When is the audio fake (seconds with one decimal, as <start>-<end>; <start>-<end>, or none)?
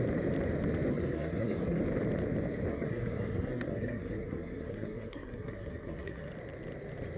0.9-1.8; 2.7-6.3